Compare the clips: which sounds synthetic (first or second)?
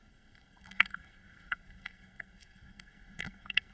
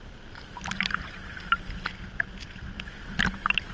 first